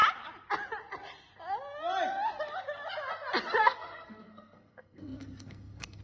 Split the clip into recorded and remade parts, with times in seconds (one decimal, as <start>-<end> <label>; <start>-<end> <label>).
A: 0.0-3.6 recorded; 3.6-6.0 remade